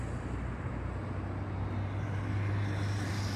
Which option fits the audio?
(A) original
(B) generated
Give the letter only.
A